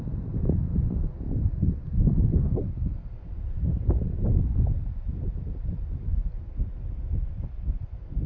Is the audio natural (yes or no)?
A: yes